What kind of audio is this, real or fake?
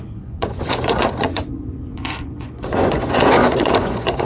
fake